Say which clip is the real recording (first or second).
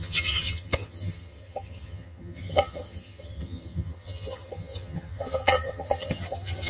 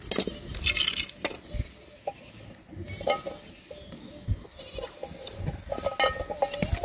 second